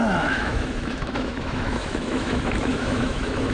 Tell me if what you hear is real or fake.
fake